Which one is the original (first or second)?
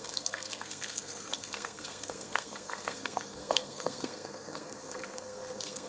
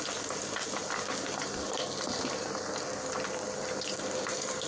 second